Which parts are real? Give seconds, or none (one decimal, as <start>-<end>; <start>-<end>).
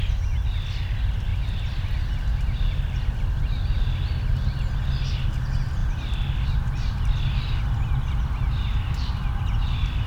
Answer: 0.0-10.1